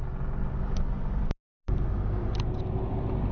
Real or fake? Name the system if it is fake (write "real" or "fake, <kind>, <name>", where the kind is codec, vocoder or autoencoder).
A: real